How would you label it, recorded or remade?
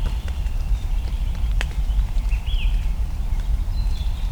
remade